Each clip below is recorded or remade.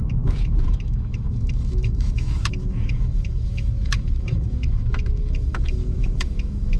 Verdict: remade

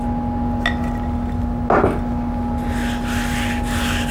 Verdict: recorded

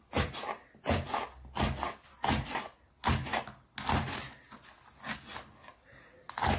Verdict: recorded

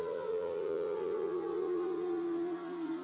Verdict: remade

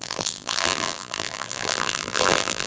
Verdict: remade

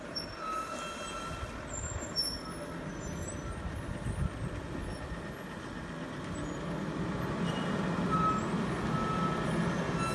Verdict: recorded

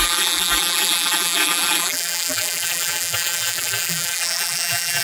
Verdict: remade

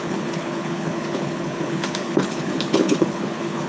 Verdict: remade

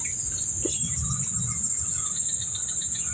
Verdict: recorded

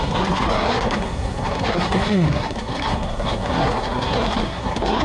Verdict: remade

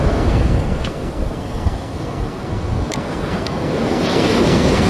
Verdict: remade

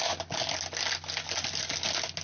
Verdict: recorded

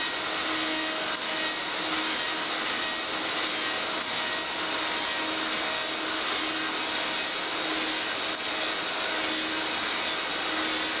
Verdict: recorded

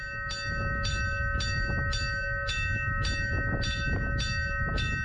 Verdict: recorded